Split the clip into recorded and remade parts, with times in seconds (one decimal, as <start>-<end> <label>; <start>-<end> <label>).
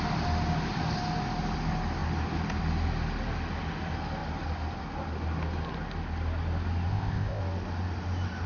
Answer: 0.0-6.9 recorded; 6.9-7.4 remade; 7.4-8.5 recorded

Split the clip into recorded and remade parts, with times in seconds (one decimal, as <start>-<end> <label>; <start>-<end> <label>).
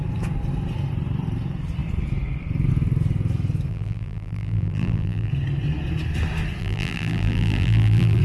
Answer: 0.0-3.7 recorded; 3.7-5.3 remade; 5.3-6.6 recorded; 6.6-8.2 remade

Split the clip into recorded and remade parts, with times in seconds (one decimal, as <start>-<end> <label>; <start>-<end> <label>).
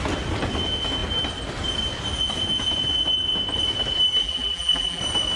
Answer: 0.0-4.2 recorded; 4.2-5.0 remade; 5.0-5.4 recorded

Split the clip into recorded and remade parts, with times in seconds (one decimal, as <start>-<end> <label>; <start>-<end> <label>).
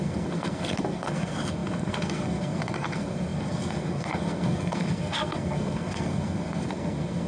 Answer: 0.0-7.3 remade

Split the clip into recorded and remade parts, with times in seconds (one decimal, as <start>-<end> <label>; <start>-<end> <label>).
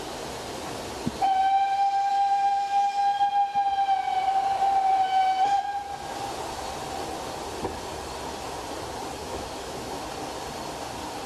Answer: 0.0-2.1 recorded; 2.1-3.3 remade; 3.3-9.2 recorded; 9.2-10.0 remade; 10.0-11.3 recorded